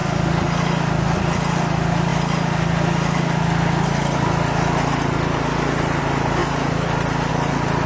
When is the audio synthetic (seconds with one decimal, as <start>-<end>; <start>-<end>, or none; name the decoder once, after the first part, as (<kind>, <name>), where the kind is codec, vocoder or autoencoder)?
none